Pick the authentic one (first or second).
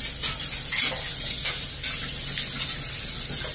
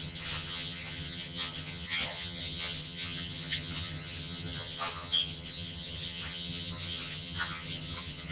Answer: first